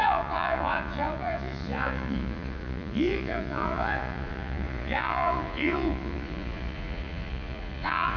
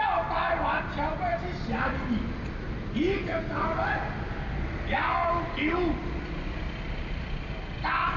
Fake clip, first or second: first